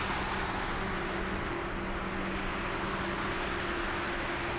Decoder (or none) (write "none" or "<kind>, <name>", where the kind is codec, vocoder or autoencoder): none